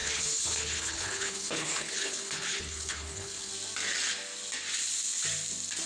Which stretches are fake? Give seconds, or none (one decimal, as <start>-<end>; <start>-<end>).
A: 0.0-3.5